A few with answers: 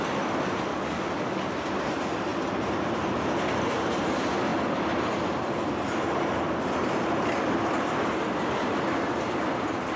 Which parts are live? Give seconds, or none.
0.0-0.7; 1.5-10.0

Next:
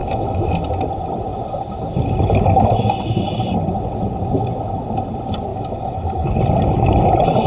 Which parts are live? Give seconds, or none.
0.5-5.5; 6.3-7.5

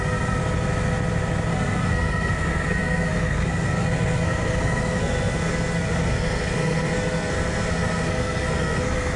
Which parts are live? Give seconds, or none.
0.4-1.5

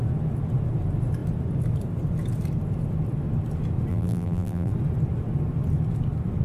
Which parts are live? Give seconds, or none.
0.0-3.9; 4.7-6.4

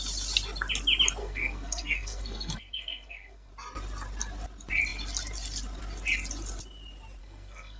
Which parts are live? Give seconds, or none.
0.0-1.2; 3.5-7.2

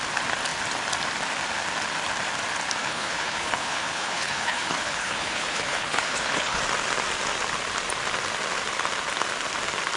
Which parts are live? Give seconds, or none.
0.0-2.8; 6.6-10.0